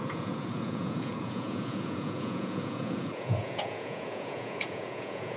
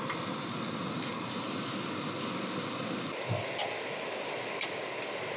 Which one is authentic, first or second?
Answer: second